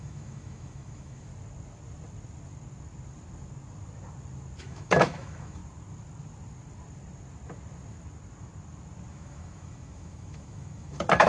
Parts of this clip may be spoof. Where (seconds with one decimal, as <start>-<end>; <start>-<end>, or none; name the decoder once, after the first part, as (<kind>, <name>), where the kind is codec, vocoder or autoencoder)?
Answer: 0.0-1.3 (autoencoder, DAC-VAE); 4.6-5.6; 9.1-11.3